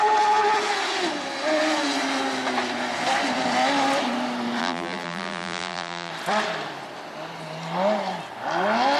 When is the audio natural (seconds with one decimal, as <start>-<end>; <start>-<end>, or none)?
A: 0.0-4.6; 6.1-9.0